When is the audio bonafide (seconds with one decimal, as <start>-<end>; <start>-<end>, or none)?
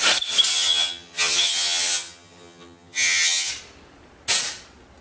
0.0-0.5; 3.5-5.0